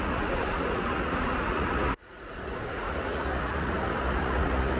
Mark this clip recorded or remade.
remade